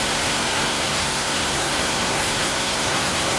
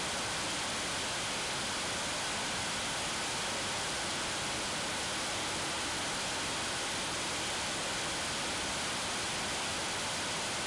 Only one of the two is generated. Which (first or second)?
first